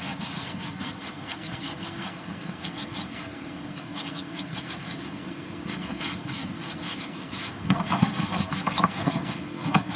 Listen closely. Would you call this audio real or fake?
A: fake